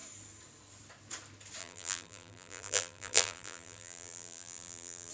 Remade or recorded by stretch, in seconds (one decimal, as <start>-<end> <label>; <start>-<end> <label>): 0.0-1.6 recorded; 1.6-5.1 remade